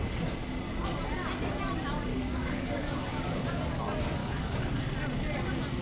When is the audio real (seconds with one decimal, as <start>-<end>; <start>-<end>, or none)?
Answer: 0.0-2.1; 3.0-4.2; 4.8-5.8

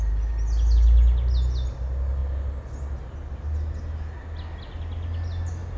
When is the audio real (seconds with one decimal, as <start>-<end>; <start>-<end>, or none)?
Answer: 0.0-5.8